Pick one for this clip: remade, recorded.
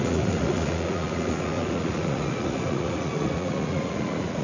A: remade